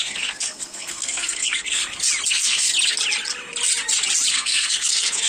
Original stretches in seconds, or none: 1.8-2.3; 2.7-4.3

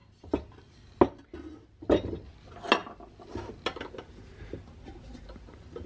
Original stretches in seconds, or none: 0.0-5.9

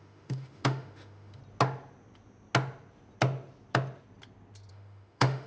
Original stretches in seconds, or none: 1.4-4.7

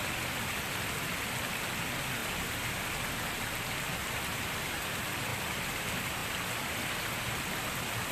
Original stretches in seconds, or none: 0.0-2.2; 2.7-4.0; 4.8-8.1